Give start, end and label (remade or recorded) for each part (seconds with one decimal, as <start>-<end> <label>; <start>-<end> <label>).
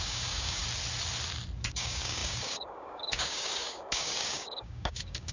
0.0-0.6 remade; 0.6-1.6 recorded; 1.6-5.3 remade